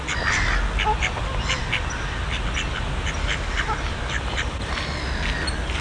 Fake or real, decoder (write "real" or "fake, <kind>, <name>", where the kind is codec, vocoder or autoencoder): real